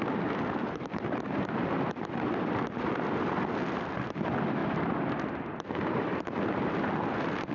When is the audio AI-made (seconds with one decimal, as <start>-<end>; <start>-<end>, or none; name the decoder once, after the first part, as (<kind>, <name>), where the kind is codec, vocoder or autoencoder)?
0.6-2.9 (vocoder, BigVGAN v2)